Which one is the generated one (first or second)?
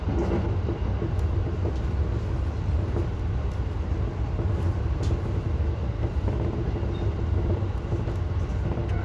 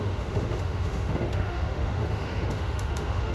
second